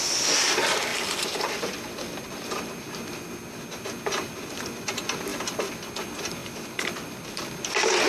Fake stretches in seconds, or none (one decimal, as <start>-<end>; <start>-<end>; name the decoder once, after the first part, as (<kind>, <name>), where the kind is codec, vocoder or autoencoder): 0.9-2.2 (vocoder, BigVGAN v2); 6.4-7.5